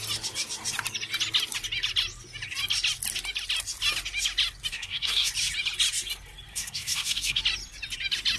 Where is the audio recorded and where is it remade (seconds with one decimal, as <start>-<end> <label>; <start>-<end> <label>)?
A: 0.0-4.7 recorded; 4.7-5.3 remade; 5.3-6.5 recorded; 6.5-7.4 remade; 7.4-8.4 recorded